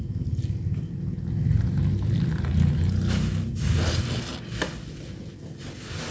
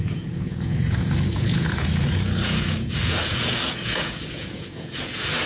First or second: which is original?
first